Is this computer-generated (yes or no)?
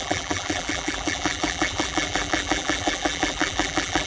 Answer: yes